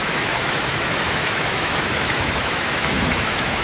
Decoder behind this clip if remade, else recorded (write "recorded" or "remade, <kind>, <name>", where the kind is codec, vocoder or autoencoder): remade, autoencoder, DAC-VAE